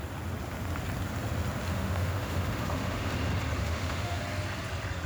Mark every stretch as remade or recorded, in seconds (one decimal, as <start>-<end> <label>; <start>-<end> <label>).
0.0-1.7 recorded; 1.7-3.1 remade; 3.1-3.6 recorded; 3.6-4.2 remade; 4.2-5.1 recorded